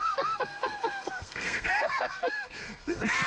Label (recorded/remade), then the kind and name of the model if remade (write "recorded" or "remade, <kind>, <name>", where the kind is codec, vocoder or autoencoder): remade, codec, SNAC